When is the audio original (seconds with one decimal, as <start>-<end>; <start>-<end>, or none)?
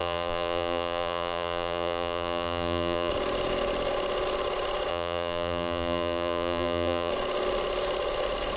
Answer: 3.1-4.9; 7.1-8.6